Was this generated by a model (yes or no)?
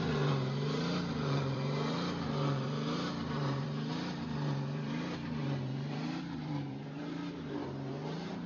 yes